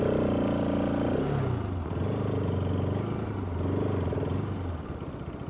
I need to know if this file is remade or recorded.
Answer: recorded